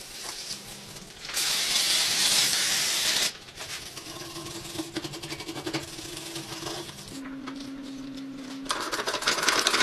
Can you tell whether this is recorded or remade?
recorded